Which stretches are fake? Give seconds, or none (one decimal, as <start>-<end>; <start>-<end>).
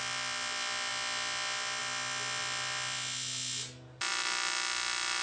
none